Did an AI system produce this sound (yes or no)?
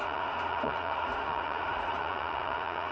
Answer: yes